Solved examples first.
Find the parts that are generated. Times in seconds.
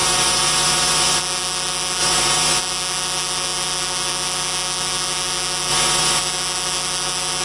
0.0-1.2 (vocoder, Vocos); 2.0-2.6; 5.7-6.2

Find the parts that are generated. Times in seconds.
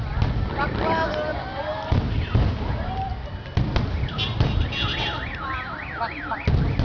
none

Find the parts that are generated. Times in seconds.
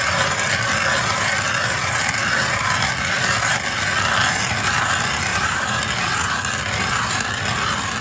5.3-5.8 (vocoder, BigVGAN v2)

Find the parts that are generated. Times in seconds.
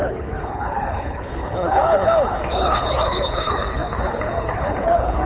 0.0-5.3 (codec, HILCodec)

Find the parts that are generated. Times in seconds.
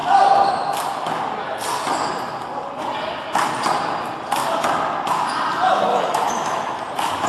5.9-6.8 (autoencoder, DAC-VAE)